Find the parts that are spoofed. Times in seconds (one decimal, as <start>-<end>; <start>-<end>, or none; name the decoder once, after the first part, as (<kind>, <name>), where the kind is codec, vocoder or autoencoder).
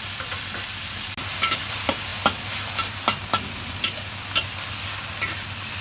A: none